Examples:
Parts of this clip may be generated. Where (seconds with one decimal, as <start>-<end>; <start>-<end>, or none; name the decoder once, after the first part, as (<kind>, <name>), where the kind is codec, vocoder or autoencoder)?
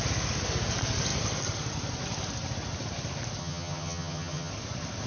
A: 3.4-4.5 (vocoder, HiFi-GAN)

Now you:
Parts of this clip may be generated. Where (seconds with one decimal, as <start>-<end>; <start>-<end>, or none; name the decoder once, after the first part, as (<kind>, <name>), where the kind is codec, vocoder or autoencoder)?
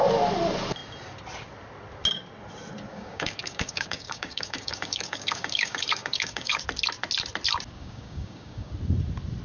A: 2.9-6.6 (codec, DAC); 7.8-8.7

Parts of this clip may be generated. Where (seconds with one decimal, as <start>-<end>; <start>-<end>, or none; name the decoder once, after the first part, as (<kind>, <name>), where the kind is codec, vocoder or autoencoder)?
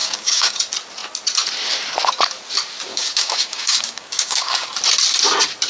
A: 0.0-0.6 (codec, DAC); 2.9-4.7